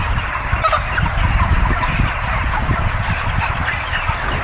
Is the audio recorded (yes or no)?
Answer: yes